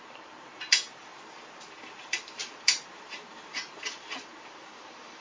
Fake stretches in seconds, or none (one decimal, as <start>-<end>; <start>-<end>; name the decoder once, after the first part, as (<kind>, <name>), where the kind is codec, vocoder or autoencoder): 0.0-1.1 (vocoder, BigVGAN v2); 1.7-5.2